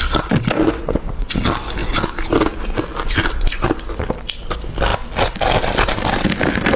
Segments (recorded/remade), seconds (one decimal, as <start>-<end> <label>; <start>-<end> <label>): 0.0-0.8 recorded; 0.8-1.4 remade; 1.4-6.8 recorded